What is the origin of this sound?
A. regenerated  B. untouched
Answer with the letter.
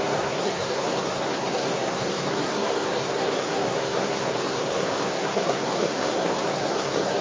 A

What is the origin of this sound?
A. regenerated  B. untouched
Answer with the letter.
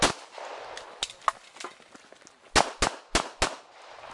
B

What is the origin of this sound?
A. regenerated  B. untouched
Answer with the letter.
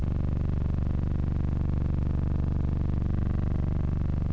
B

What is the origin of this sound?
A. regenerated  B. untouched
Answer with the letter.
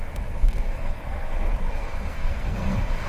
A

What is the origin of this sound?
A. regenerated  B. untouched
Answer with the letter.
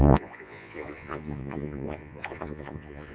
A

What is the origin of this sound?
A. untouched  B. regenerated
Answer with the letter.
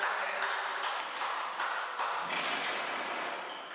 A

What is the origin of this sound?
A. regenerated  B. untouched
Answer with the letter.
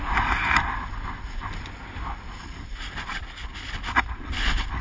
B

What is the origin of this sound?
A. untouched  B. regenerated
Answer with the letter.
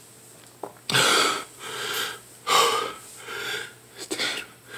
A